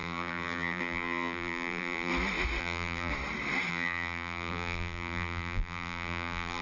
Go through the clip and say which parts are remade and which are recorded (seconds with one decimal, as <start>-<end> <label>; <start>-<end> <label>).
0.0-2.1 remade; 2.1-2.6 recorded; 2.6-3.1 remade; 3.1-3.7 recorded; 3.7-6.6 remade